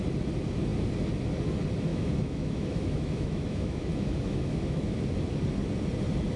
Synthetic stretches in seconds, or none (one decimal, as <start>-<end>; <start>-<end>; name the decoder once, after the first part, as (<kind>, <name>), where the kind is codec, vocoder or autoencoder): 1.9-5.0 (autoencoder, DAC-VAE)